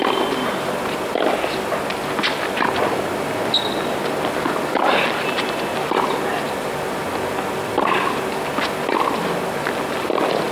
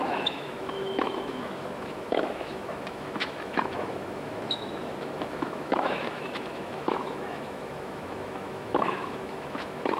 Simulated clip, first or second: second